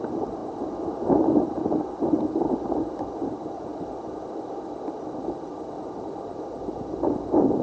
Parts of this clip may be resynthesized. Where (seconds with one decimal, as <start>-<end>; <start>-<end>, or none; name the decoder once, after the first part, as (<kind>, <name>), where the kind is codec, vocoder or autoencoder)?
none